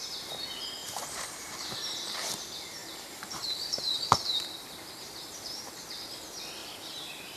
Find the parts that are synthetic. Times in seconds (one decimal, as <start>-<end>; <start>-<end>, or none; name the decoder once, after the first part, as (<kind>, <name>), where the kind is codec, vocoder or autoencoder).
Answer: 0.8-2.3 (vocoder, BigVGAN v2); 2.8-5.7; 6.6-7.4